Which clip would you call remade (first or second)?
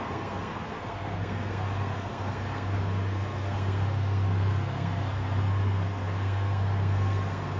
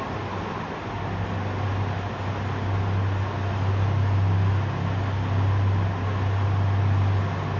first